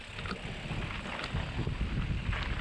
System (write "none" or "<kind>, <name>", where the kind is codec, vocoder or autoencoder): none